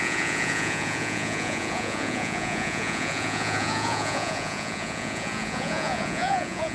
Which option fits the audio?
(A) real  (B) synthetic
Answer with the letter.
B